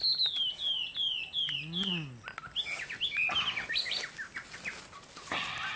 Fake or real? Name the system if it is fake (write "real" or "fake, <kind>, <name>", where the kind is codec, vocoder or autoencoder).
real